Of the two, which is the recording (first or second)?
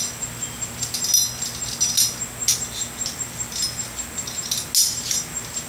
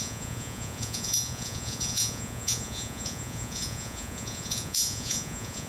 first